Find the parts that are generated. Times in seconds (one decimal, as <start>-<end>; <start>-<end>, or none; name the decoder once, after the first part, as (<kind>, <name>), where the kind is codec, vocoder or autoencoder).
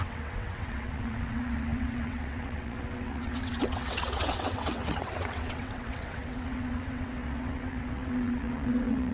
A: 0.0-9.1 (vocoder, WaveNeXt)